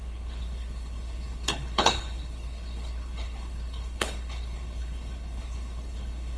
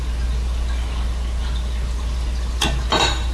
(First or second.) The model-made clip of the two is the first